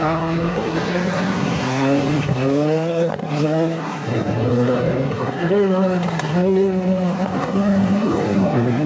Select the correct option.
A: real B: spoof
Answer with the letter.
B